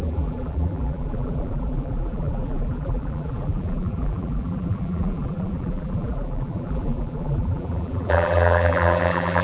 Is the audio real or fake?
fake